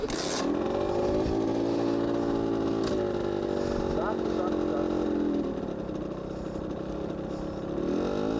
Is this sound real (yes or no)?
yes